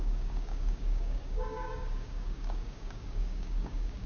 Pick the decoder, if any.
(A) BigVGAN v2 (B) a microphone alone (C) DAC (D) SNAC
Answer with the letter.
C